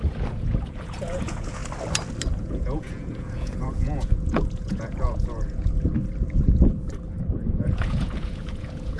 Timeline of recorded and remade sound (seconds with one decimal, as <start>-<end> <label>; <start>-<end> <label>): 0.0-1.6 remade; 1.6-2.4 recorded; 2.4-5.9 remade; 5.9-7.3 recorded; 7.3-9.0 remade